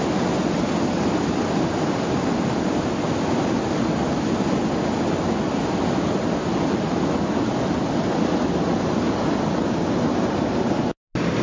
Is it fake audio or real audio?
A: real